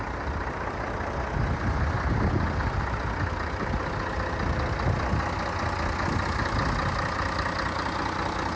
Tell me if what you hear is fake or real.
real